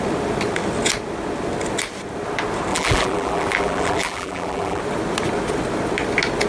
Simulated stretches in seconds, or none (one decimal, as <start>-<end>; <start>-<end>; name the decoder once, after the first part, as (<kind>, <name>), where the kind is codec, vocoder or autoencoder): 2.7-4.8 (vocoder, BigVGAN v2)